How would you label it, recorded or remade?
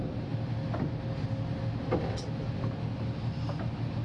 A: recorded